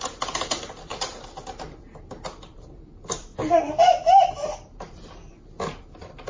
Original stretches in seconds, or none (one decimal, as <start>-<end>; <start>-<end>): 0.9-2.4; 3.3-4.8; 5.2-5.8